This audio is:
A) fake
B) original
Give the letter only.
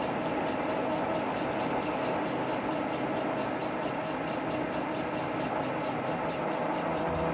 B